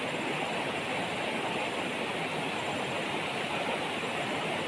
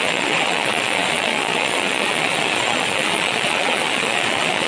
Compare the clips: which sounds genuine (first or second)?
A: first